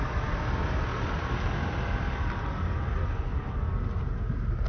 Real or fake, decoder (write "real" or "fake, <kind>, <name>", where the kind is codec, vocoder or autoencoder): real